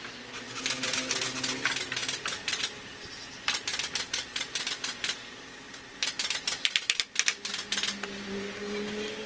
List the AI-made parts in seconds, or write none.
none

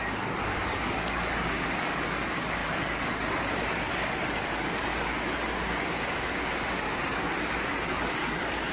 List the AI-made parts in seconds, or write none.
0.0-8.7 (codec, DAC)

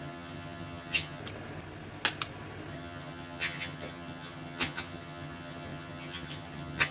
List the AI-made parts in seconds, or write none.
0.0-1.2 (vocoder, HiFi-GAN); 2.7-6.9

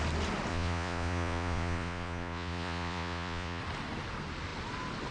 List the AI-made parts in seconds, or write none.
0.5-3.6 (vocoder, Vocos)

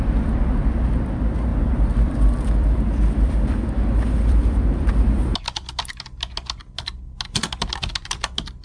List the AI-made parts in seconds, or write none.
1.5-4.9 (vocoder, BigVGAN v2)